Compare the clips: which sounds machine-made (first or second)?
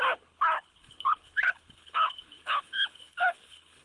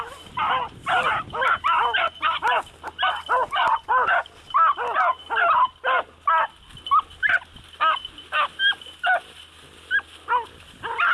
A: first